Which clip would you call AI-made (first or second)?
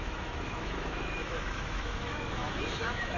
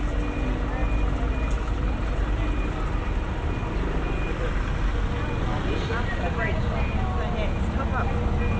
first